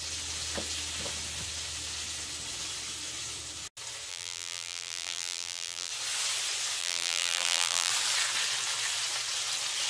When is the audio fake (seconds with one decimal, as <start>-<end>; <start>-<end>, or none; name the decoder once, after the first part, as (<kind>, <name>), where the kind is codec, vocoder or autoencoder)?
4.1-5.9 (vocoder, BigVGAN v2); 6.8-7.9

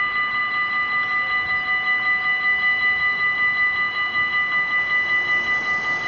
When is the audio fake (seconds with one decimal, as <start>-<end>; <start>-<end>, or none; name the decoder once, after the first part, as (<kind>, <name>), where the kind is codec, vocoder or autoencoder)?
none

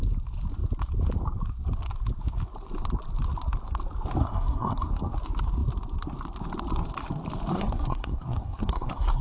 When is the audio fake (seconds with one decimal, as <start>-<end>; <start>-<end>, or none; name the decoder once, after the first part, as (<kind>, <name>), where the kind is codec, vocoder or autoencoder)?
4.2-4.9 (codec, SNAC); 7.5-9.2